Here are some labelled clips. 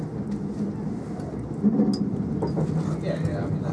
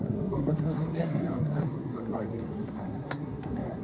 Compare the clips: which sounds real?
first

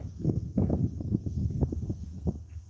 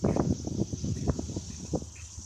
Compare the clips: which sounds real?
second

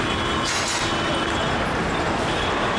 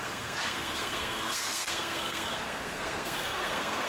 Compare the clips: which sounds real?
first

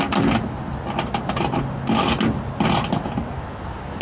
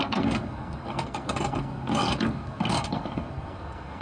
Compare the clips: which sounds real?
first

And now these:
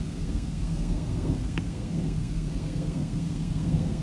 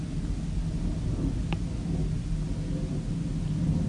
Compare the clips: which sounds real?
second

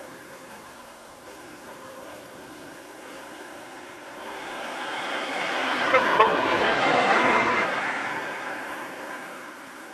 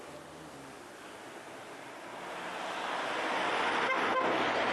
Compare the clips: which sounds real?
second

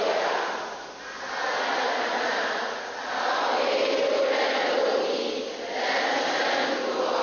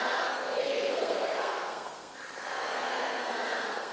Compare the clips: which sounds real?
first